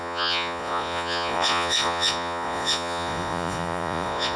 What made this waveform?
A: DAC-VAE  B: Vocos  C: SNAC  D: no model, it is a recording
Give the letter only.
B